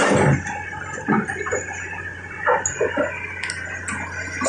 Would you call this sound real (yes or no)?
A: yes